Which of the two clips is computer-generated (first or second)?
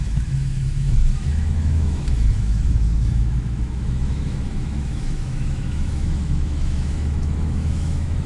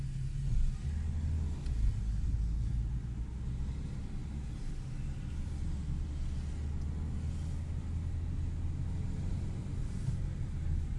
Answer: first